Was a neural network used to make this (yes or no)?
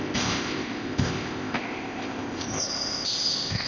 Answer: yes